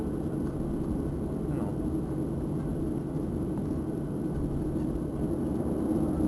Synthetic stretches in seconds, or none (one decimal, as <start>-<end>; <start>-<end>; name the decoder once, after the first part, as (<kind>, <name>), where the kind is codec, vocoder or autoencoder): 2.7-5.0 (vocoder, BigVGAN v2)